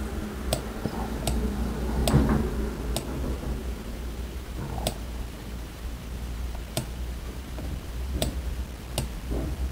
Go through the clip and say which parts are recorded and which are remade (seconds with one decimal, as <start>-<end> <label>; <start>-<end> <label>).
0.0-0.4 recorded; 0.4-1.2 remade; 1.2-3.6 recorded; 3.6-8.5 remade; 8.5-9.7 recorded